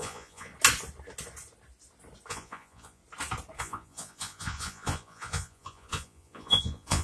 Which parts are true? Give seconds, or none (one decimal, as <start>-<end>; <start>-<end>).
0.5-2.3; 3.0-3.6